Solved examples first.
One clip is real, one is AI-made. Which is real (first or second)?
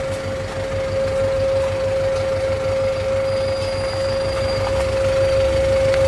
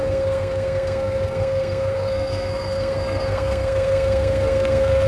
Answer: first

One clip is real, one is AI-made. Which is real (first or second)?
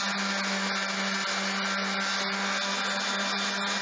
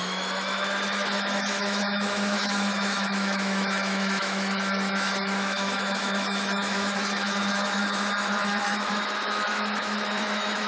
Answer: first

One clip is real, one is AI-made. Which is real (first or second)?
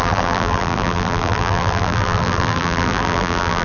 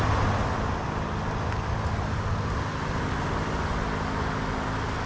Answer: second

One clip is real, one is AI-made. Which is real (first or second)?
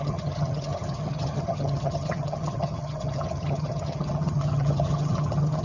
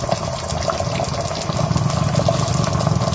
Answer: second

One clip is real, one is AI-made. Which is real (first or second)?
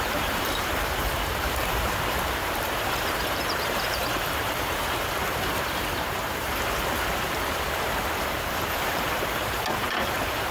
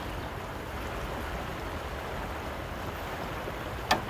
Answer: second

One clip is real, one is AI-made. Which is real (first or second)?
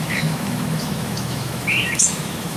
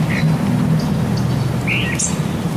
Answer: second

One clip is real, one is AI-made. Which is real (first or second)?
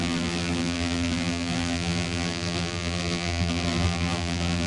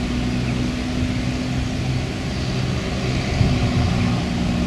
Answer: second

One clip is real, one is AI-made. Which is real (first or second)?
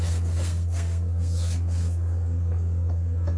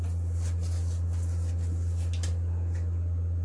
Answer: second